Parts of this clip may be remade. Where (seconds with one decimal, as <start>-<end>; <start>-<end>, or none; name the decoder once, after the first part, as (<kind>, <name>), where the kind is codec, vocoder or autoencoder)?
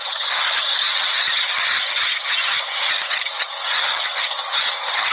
0.0-5.1 (vocoder, HiFi-GAN)